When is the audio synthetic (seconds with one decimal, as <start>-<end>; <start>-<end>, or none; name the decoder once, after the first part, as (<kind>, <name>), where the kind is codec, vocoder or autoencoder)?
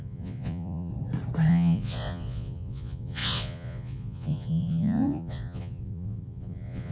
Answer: 0.0-0.9 (vocoder, Vocos); 1.5-6.9